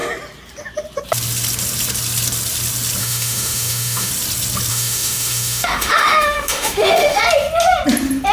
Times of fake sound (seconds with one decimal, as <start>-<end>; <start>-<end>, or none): 3.0-4.1; 4.7-7.2